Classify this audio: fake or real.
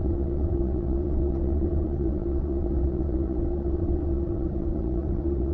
fake